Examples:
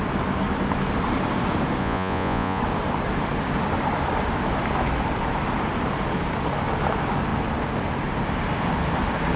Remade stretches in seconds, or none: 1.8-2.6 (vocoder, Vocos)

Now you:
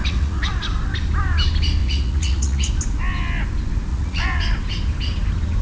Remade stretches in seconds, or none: 0.0-0.5 (vocoder, Vocos); 1.8-2.7; 3.9-4.4

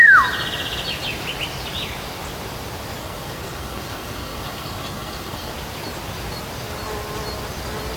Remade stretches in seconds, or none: 3.0-5.5 (codec, SNAC)

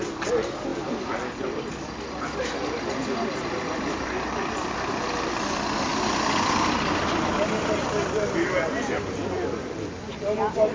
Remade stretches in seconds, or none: none

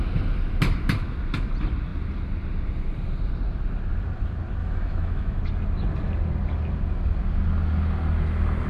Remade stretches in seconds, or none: 4.6-5.4 (autoencoder, DAC-VAE)